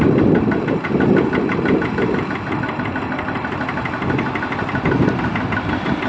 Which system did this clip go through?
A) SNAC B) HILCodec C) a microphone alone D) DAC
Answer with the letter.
C